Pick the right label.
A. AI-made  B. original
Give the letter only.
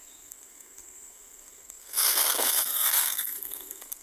A